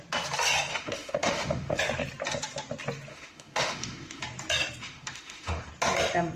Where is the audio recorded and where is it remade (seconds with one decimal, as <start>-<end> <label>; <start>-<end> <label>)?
0.0-0.7 recorded; 0.7-1.8 remade; 1.8-3.1 recorded; 3.1-4.2 remade; 4.2-4.8 recorded; 4.8-5.7 remade; 5.7-6.4 recorded